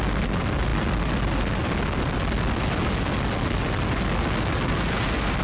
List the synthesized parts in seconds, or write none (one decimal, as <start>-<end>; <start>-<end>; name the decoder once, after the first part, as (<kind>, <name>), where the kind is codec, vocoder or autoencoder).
none